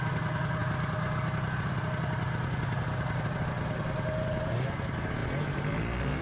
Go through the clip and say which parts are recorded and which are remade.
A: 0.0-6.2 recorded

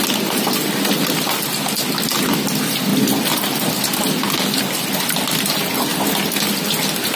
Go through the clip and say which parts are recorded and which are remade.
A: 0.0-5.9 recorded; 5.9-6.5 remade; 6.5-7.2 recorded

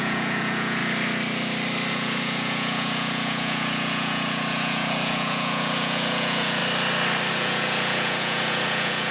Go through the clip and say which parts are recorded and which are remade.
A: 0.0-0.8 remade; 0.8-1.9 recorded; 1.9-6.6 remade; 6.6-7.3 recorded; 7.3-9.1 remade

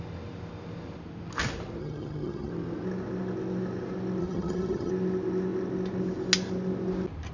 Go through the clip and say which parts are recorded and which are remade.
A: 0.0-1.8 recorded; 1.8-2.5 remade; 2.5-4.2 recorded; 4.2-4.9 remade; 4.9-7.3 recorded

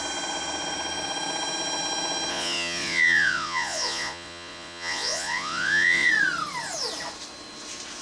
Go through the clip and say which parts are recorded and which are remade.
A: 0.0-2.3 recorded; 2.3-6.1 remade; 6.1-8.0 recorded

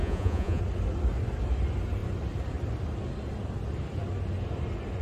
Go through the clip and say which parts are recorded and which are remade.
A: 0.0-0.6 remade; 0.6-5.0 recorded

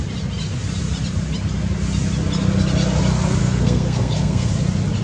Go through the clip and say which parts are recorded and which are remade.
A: 0.0-3.4 recorded; 3.4-4.5 remade; 4.5-5.0 recorded

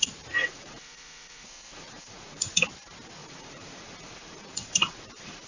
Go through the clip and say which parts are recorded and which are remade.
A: 0.0-0.4 recorded; 0.4-2.6 remade; 2.6-3.2 recorded; 3.2-5.5 remade